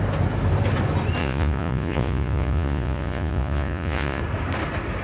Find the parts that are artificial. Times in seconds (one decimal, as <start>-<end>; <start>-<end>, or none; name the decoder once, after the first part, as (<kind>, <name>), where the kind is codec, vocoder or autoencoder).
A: 1.2-4.2 (vocoder, Vocos)